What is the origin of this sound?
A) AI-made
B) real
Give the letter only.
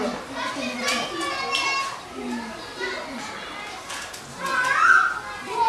B